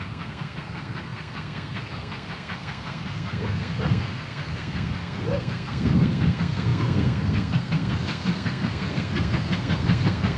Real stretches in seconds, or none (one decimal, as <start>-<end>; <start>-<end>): none